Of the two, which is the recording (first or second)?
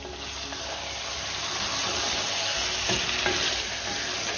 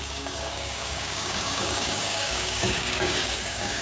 first